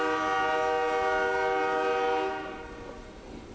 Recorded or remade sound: recorded